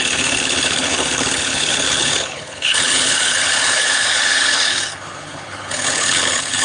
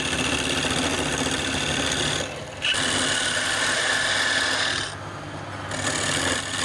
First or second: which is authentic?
second